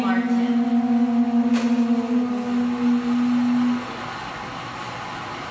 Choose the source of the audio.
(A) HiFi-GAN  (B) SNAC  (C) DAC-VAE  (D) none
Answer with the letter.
D